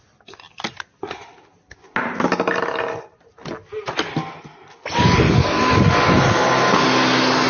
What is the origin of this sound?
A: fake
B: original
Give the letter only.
B